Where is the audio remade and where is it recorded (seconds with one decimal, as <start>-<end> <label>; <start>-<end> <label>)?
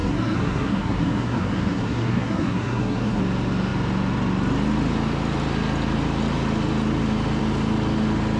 0.0-3.2 remade; 3.2-8.4 recorded